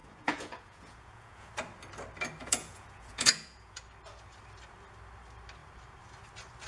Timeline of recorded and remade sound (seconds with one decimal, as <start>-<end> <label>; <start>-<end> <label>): 0.0-1.5 remade; 1.5-2.4 recorded; 2.4-3.8 remade; 3.8-6.7 recorded